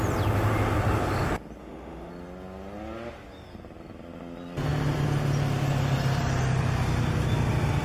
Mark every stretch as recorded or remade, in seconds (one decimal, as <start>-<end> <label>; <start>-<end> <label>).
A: 0.0-1.6 recorded; 1.6-2.1 remade; 2.1-7.8 recorded